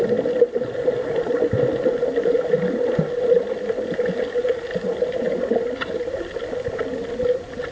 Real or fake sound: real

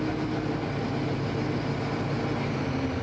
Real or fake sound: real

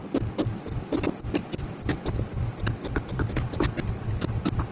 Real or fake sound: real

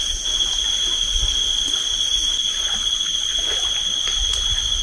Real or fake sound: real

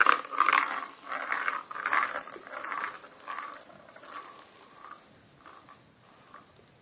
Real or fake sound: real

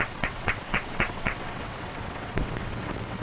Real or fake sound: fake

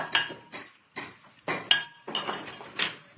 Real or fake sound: real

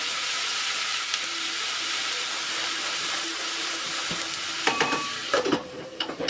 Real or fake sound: fake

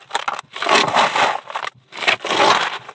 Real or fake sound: real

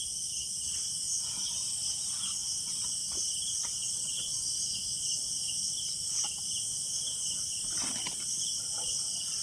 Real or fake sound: real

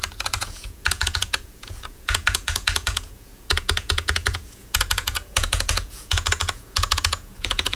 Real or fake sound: fake